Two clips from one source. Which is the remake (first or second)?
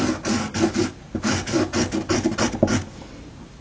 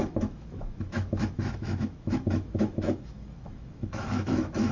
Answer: second